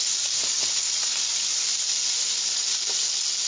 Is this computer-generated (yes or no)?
no